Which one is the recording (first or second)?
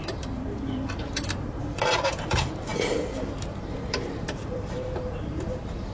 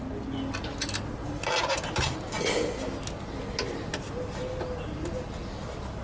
second